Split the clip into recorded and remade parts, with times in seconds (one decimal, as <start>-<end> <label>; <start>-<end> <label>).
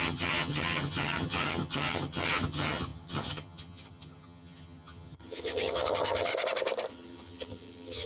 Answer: 0.0-6.3 remade; 6.3-6.9 recorded; 6.9-8.1 remade